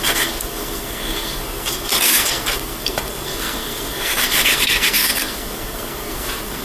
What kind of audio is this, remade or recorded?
remade